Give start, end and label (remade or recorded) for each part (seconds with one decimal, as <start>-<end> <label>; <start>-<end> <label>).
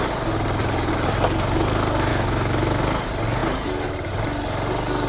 0.0-2.1 recorded; 2.1-2.8 remade; 2.8-5.1 recorded